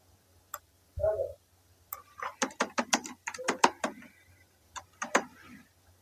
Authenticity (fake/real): real